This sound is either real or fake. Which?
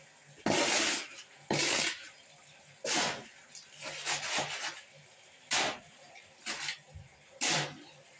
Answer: real